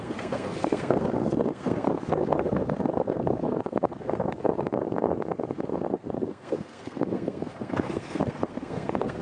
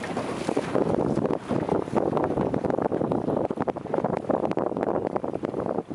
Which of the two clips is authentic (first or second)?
second